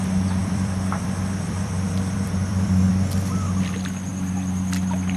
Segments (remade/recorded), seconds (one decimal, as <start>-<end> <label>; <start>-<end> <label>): 0.0-0.4 recorded; 0.4-2.9 remade; 2.9-5.2 recorded

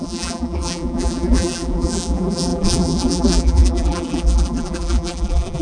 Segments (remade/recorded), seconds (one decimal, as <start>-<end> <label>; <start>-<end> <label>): 0.0-5.6 remade

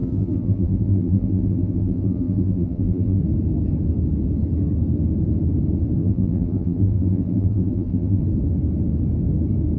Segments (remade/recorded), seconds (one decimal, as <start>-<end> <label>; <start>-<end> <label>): 0.0-3.2 remade; 3.2-6.0 recorded; 6.0-8.2 remade; 8.2-9.8 recorded

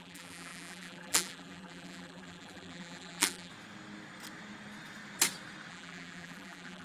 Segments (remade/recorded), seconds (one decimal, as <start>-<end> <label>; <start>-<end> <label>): 0.0-3.5 remade; 3.5-5.7 recorded; 5.7-6.8 remade

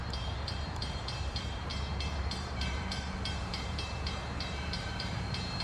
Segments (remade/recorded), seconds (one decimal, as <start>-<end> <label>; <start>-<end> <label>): 0.0-5.6 remade

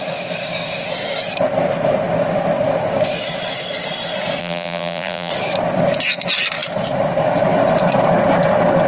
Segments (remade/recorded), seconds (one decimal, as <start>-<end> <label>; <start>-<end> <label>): 0.0-4.4 recorded; 4.4-5.3 remade; 5.3-8.9 recorded

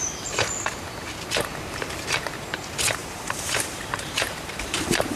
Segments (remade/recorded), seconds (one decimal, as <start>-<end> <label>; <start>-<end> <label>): 0.0-1.5 remade; 1.5-2.1 recorded; 2.1-5.2 remade

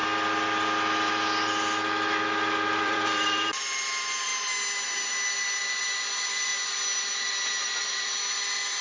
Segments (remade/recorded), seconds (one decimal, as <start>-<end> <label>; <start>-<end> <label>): 0.0-2.8 recorded; 2.8-4.3 remade; 4.3-5.8 recorded; 5.8-8.8 remade